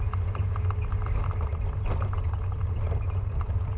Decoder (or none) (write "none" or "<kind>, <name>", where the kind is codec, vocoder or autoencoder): none